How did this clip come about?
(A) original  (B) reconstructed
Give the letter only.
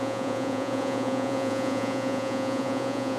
B